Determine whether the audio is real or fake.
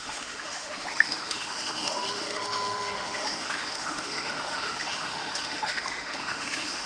fake